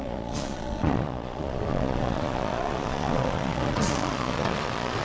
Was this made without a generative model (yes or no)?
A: no